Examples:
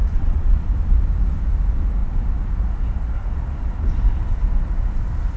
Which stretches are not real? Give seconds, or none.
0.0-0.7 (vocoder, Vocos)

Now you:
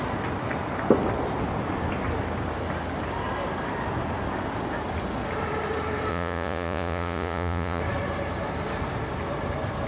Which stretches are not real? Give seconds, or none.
6.1-7.8 (vocoder, Vocos)

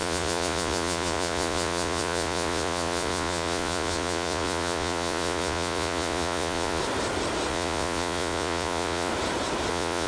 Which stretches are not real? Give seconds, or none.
0.0-6.8 (vocoder, Vocos); 7.5-9.1; 9.7-10.1

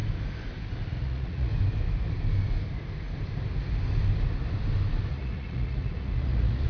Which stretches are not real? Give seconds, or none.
0.9-1.5 (vocoder, Vocos); 5.1-6.7

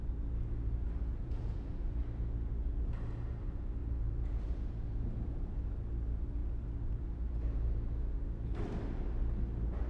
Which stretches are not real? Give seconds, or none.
1.1-2.0 (vocoder, Vocos); 3.8-5.6

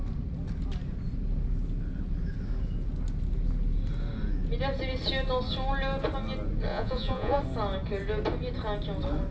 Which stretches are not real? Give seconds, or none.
6.7-7.4 (vocoder, Vocos)